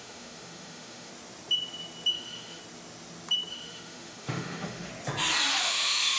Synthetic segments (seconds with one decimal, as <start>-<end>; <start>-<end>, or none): 0.0-1.1; 2.1-2.6; 3.5-4.9; 5.6-6.2